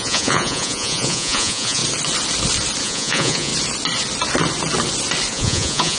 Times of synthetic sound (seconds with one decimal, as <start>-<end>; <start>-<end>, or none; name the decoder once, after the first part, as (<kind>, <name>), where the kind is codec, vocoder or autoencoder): 0.0-1.8 (vocoder, Vocos); 2.8-3.5; 5.3-6.0